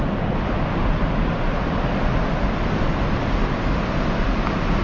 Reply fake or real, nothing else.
real